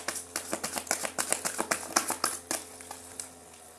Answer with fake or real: real